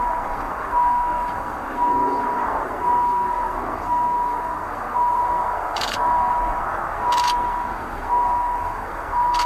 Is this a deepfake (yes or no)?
yes